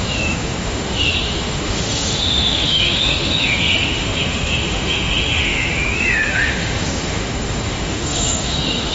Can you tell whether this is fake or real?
fake